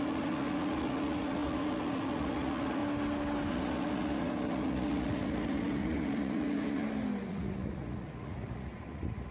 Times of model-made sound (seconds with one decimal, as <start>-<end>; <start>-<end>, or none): 0.0-2.8; 3.5-6.8; 7.3-9.3